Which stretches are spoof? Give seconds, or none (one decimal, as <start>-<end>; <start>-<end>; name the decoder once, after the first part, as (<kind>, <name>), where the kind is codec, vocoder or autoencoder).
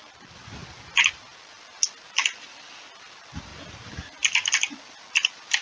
none